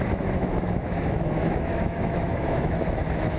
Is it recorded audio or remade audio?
remade